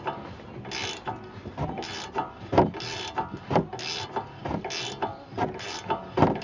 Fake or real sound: real